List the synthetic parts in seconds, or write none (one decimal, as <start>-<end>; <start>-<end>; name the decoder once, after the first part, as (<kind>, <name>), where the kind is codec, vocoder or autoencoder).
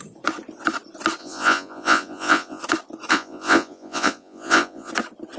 1.2-2.6 (vocoder, Vocos); 3.1-4.9